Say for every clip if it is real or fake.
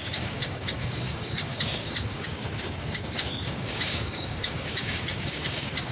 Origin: fake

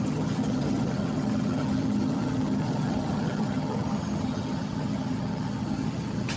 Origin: fake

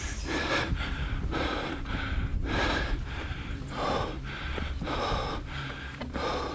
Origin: fake